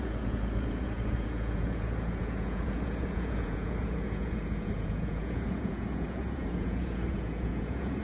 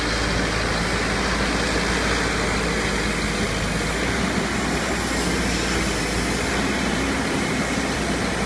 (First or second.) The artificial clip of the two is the first